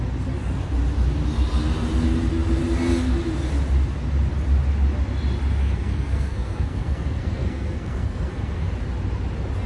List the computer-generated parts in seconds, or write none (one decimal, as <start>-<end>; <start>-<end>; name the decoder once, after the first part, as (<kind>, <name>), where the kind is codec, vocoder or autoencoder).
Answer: 5.6-8.7 (codec, SNAC)